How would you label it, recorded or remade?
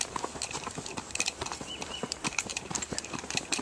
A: remade